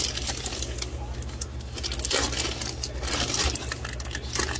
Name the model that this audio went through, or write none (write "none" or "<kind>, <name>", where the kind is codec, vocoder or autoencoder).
none